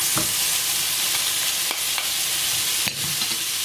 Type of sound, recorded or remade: recorded